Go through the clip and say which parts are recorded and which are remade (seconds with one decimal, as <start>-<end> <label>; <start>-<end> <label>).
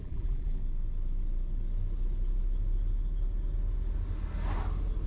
0.0-0.6 remade; 0.6-5.1 recorded